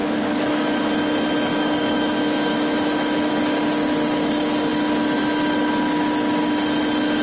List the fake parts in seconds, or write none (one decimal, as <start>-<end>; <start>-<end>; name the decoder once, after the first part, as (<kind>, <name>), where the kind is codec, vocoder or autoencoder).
0.0-0.8 (autoencoder, DAC-VAE); 1.5-3.3